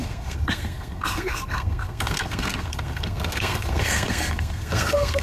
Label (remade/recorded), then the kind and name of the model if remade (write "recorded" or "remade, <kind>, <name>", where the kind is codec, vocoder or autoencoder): remade, codec, SNAC